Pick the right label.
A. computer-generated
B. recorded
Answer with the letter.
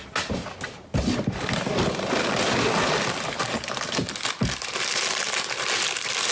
B